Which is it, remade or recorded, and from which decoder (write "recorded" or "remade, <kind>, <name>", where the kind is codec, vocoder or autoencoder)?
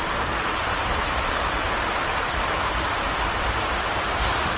remade, vocoder, BigVGAN v2